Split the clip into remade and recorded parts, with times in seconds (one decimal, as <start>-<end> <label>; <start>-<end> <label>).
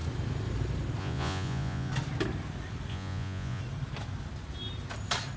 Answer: 0.0-1.0 recorded; 1.0-1.9 remade; 1.9-2.9 recorded; 2.9-3.6 remade; 3.6-5.4 recorded